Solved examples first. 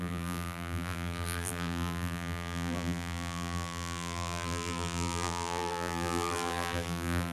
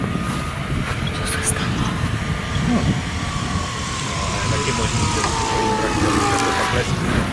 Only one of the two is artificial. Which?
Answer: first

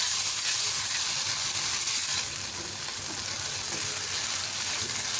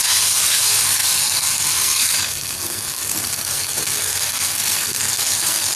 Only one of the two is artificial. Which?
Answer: second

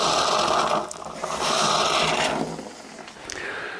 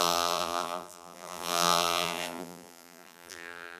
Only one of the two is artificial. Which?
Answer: second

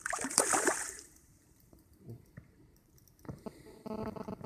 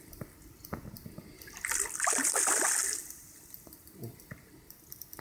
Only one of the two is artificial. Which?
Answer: first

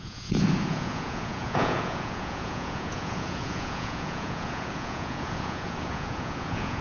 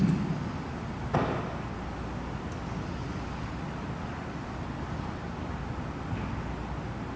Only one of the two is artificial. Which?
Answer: first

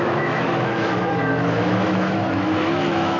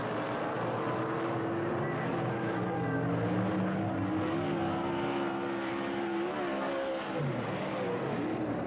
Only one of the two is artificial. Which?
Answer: first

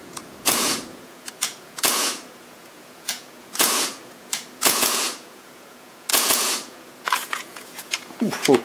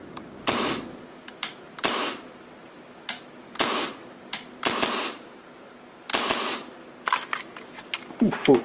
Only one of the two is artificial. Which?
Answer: first